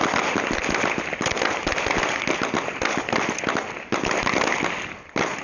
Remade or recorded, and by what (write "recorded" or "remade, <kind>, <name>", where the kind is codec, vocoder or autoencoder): recorded